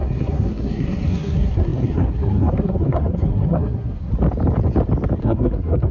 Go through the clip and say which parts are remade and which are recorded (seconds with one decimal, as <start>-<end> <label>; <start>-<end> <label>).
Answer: 0.0-4.1 remade; 4.1-5.2 recorded; 5.2-5.9 remade